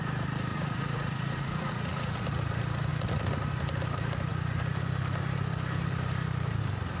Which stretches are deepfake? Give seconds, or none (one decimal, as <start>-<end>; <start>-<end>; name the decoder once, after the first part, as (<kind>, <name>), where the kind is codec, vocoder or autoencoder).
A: 0.5-2.1 (vocoder, Vocos)